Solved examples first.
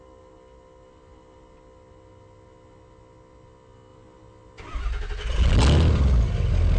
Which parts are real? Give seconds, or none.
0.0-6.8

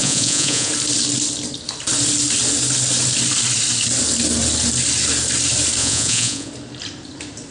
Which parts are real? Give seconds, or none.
0.7-5.8; 6.5-7.5

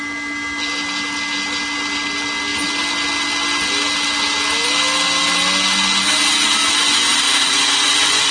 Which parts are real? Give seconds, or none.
0.0-7.4

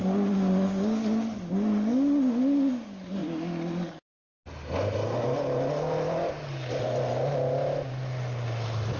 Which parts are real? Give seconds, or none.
0.0-9.0

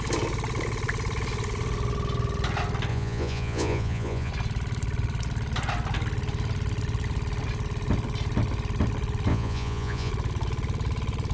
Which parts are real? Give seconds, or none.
0.0-2.9; 4.3-9.3; 10.1-11.3

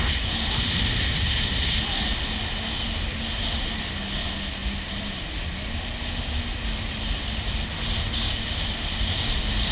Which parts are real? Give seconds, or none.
0.0-9.7